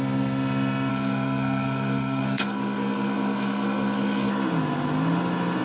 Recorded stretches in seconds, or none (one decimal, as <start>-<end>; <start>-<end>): 0.0-0.9; 4.3-5.6